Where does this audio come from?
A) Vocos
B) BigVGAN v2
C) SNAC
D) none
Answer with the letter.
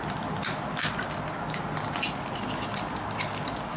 D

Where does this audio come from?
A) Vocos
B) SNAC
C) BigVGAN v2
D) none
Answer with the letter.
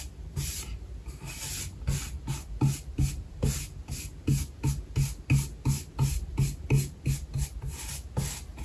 D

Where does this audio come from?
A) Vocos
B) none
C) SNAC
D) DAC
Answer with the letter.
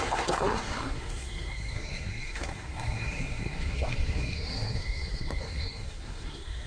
C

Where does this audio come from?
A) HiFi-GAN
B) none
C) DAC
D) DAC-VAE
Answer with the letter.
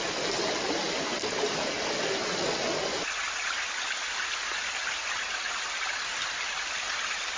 B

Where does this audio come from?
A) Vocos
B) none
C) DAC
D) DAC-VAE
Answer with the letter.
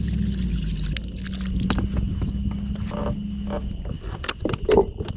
B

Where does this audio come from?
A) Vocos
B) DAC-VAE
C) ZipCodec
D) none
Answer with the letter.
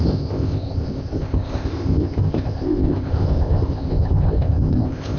C